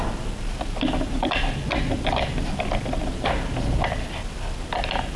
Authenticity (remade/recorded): recorded